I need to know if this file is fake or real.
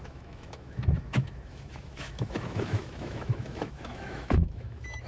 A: fake